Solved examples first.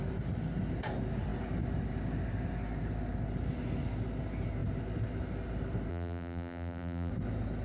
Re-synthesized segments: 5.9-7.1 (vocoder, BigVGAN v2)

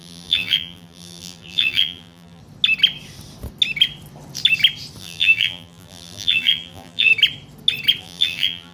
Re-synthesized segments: 0.0-2.4 (vocoder, BigVGAN v2); 5.0-7.1; 8.0-8.7